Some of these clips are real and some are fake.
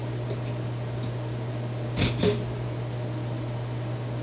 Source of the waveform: real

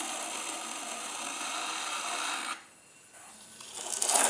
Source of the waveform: real